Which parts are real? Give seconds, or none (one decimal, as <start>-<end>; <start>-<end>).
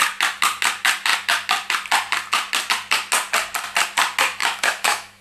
0.0-4.4